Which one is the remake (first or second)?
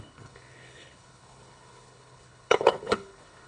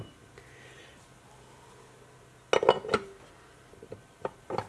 first